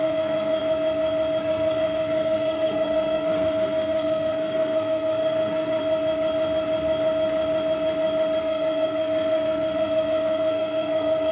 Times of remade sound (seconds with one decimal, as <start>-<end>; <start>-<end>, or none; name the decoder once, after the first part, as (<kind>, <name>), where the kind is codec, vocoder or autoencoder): 0.0-0.6 (codec, SNAC); 1.4-5.8; 8.4-11.3